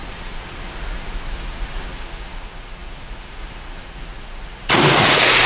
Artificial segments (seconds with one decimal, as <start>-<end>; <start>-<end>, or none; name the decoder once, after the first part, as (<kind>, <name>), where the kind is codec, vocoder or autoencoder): 0.0-5.5 (vocoder, Vocos)